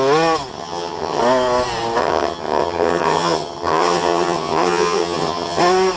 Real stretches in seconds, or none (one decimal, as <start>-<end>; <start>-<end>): 0.0-0.5; 1.2-2.0; 5.6-6.0